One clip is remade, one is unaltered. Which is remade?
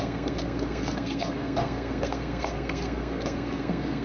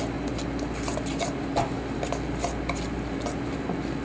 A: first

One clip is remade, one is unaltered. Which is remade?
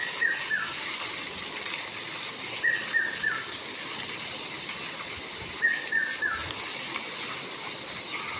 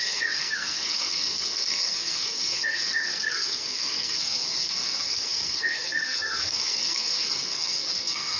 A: second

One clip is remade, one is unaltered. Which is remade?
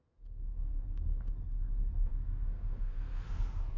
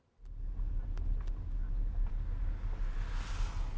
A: first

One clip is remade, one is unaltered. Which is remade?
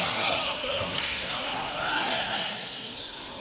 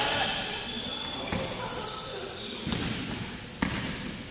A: first